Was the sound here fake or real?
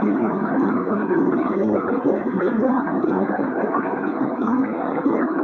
fake